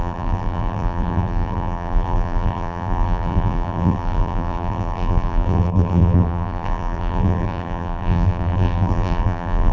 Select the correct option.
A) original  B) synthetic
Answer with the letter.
B